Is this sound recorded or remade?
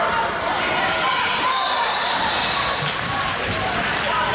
remade